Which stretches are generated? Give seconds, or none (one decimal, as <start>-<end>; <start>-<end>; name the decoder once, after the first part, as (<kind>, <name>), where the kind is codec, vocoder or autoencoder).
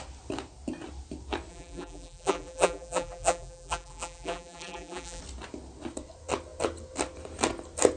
1.5-5.2 (vocoder, BigVGAN v2)